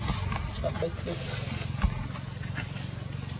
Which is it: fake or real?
real